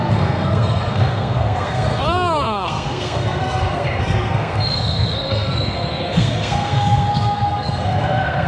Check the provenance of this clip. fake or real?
fake